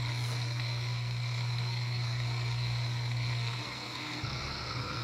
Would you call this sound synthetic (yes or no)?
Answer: yes